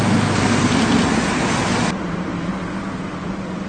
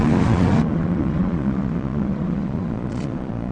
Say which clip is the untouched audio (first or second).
first